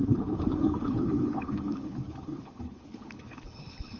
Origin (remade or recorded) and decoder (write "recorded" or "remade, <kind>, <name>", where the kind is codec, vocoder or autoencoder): remade, codec, HILCodec